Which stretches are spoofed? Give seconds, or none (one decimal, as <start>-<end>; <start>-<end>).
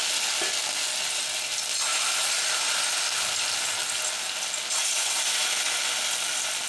none